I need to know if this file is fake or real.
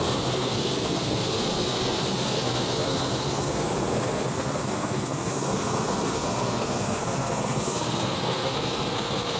fake